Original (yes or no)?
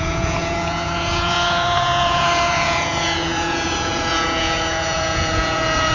no